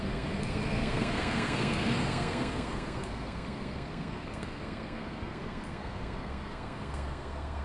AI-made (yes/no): yes